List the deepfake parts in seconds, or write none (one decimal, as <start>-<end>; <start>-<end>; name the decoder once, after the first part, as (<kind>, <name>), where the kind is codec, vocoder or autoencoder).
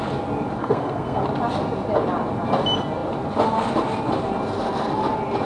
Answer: 0.6-1.2 (codec, SNAC)